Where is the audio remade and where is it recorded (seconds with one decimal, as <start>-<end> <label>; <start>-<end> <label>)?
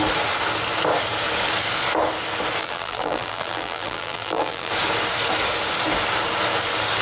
0.0-2.6 recorded; 2.6-4.7 remade; 4.7-7.0 recorded